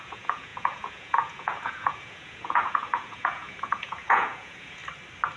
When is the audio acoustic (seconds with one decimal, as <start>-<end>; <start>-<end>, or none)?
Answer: 4.8-5.4